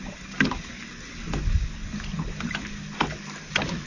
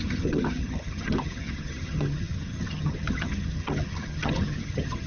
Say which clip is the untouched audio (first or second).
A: first